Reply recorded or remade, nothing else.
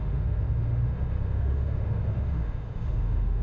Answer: remade